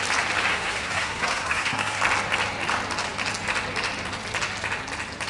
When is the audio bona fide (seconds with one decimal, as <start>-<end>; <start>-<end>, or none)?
0.0-0.5; 2.0-5.3